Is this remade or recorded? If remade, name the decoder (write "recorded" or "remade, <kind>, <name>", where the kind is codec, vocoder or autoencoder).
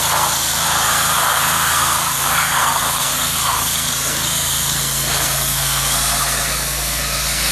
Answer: remade, codec, SNAC